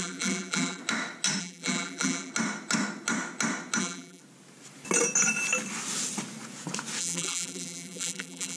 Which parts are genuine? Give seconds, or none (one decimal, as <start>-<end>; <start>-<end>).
0.8-1.4; 2.3-3.8; 4.2-7.0